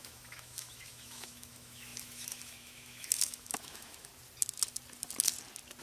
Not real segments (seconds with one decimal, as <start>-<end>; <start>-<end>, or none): 0.0-4.1